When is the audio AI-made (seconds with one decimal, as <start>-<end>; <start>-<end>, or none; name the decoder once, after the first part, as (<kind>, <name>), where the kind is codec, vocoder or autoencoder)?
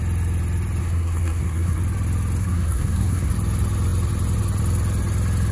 0.8-1.8 (codec, SNAC); 2.4-3.3